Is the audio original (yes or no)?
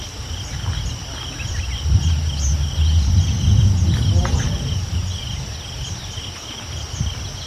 yes